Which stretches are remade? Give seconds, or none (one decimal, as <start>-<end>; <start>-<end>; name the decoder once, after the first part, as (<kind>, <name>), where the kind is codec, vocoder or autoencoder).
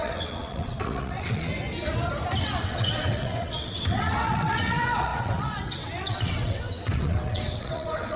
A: 0.0-1.5 (vocoder, WaveNeXt); 2.4-8.2